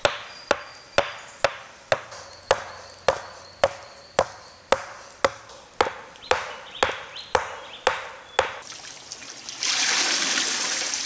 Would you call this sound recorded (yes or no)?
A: yes